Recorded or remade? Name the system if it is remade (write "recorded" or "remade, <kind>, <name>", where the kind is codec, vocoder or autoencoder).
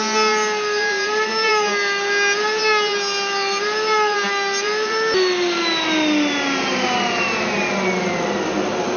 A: recorded